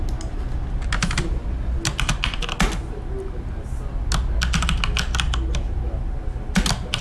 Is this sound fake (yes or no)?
no